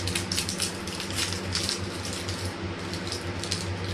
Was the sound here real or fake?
real